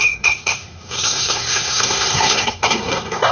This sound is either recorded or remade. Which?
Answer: remade